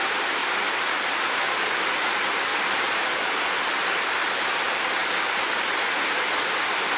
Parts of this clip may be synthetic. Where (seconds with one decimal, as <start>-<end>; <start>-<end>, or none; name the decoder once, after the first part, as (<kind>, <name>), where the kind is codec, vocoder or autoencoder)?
0.0-5.0 (vocoder, BigVGAN v2); 6.1-7.0